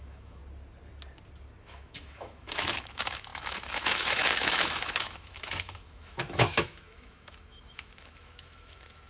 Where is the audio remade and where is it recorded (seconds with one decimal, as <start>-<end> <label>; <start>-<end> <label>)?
0.0-0.4 remade; 0.4-1.6 recorded; 1.6-9.1 remade